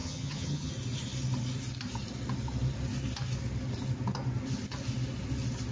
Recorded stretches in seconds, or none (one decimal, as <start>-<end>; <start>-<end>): 0.7-5.7

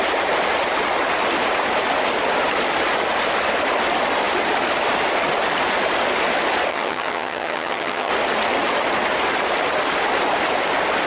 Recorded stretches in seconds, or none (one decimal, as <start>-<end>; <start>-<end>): 0.0-6.7; 8.1-11.1

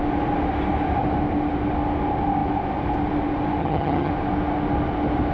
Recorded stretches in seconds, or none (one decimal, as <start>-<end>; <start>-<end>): 0.0-3.6; 4.1-5.3

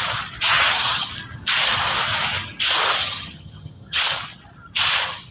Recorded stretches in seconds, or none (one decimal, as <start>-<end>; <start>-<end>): 0.0-0.5; 1.1-3.0; 4.0-5.3